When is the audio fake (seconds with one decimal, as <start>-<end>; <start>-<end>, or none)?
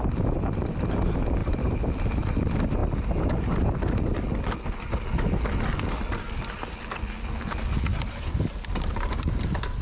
1.4-1.9; 7.9-9.8